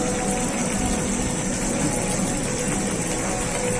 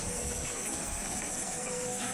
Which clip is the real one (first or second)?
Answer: first